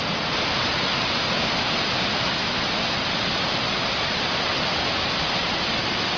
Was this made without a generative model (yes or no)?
yes